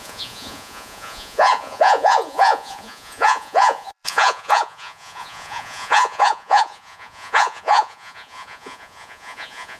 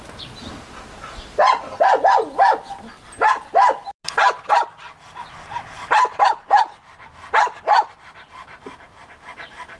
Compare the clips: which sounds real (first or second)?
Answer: second